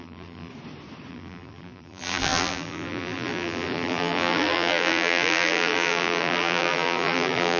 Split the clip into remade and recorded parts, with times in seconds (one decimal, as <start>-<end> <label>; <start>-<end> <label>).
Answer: 0.0-0.5 remade; 0.5-1.1 recorded; 1.1-7.6 remade

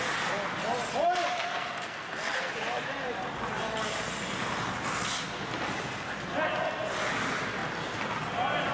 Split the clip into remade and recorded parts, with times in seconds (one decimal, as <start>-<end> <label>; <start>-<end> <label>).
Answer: 0.0-1.4 recorded; 1.4-2.5 remade; 2.5-8.7 recorded

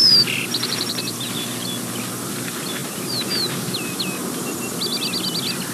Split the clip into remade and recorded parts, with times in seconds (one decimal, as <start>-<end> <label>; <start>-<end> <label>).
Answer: 0.0-1.3 remade; 1.3-2.8 recorded; 2.8-3.7 remade; 3.7-5.7 recorded